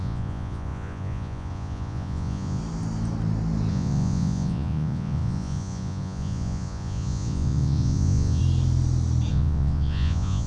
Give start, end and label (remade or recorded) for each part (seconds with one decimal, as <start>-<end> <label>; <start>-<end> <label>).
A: 0.0-2.6 remade; 2.6-3.7 recorded; 3.7-8.4 remade; 8.4-9.3 recorded; 9.3-10.5 remade